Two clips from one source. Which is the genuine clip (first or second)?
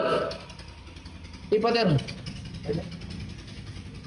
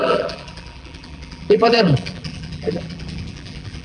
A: first